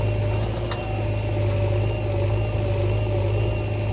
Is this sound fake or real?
real